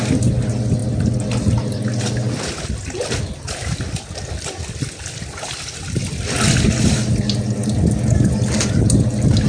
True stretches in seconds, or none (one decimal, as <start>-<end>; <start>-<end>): 0.0-9.5